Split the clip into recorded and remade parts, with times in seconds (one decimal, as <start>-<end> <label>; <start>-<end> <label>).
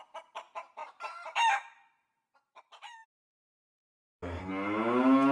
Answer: 0.0-0.8 recorded; 0.8-2.6 remade; 2.6-3.0 recorded; 3.0-4.4 remade; 4.4-5.3 recorded